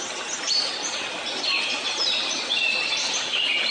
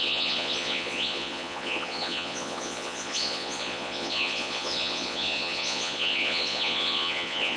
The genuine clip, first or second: first